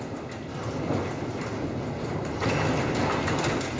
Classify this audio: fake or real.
real